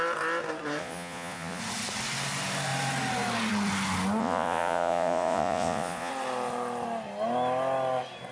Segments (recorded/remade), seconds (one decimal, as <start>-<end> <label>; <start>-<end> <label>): 0.0-0.8 recorded; 0.8-1.6 remade; 1.6-4.2 recorded; 4.2-6.1 remade; 6.1-8.3 recorded